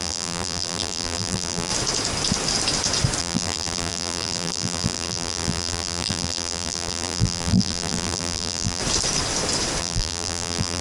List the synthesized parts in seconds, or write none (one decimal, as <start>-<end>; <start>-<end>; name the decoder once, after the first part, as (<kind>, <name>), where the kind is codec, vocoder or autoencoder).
0.0-1.7 (vocoder, BigVGAN v2); 3.2-8.8; 9.8-10.8